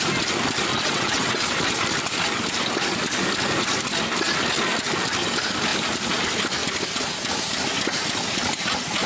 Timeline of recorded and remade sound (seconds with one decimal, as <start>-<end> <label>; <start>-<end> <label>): 0.0-0.7 recorded; 0.7-1.4 remade; 1.4-9.1 recorded